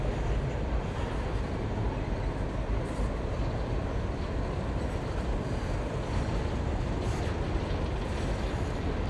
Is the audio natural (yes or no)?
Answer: yes